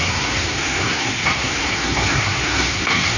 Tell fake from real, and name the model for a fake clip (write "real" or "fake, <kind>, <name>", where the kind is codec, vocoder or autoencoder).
fake, codec, SNAC